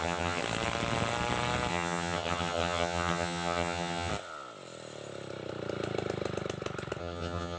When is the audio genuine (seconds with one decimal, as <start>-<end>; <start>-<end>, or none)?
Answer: 0.4-1.7; 4.1-7.0